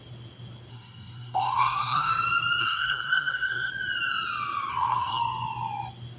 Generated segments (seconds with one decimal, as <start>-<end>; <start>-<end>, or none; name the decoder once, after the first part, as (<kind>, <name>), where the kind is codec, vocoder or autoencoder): 0.7-2.1 (codec, SNAC); 2.6-3.7; 4.7-5.2